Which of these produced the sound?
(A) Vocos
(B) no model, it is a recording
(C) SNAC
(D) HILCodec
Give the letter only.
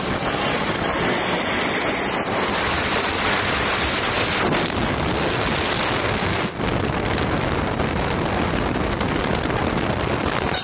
B